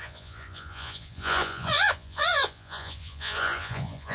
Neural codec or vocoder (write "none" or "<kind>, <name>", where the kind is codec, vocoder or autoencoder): vocoder, Vocos